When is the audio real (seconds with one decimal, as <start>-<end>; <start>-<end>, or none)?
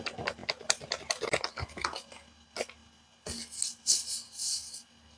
0.0-0.4; 1.5-5.2